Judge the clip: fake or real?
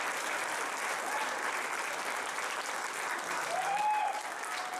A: real